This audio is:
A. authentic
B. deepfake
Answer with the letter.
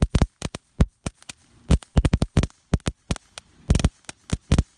A